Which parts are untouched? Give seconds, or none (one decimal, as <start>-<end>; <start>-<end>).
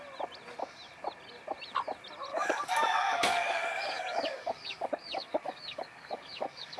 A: 0.0-2.3